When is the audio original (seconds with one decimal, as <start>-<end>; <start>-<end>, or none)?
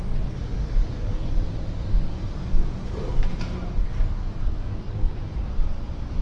0.0-0.5; 1.3-3.8; 5.2-6.2